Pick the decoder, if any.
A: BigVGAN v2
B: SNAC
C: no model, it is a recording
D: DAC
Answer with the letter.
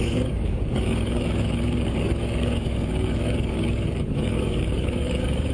D